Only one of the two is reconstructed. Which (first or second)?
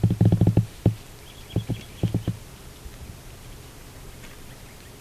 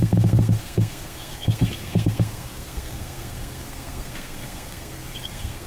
second